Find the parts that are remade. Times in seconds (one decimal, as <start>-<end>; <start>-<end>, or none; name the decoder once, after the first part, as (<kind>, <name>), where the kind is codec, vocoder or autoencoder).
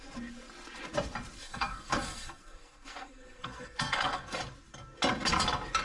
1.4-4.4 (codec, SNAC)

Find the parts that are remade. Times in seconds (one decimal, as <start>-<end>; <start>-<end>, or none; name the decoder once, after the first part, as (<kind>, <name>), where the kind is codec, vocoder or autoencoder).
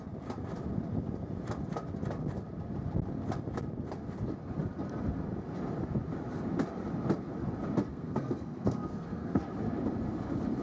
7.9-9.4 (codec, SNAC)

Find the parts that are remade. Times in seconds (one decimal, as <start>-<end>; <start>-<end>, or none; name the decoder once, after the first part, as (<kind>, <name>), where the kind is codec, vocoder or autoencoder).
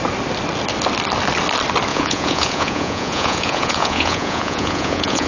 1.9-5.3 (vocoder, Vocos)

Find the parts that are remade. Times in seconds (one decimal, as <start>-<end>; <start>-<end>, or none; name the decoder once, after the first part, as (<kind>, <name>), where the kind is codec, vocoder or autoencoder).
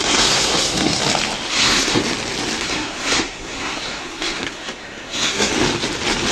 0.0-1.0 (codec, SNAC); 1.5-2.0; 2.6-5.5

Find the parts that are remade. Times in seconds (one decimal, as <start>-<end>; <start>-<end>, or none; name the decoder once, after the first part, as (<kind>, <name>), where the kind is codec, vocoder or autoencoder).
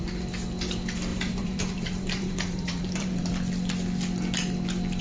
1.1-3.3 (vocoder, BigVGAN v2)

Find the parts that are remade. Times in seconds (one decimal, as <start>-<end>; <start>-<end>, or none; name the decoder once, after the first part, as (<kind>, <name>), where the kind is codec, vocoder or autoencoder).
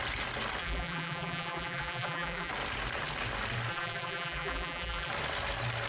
0.6-2.5 (vocoder, BigVGAN v2); 3.7-5.1